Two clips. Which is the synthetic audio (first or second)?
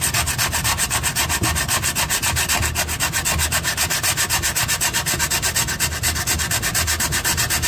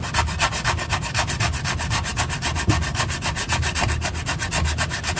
second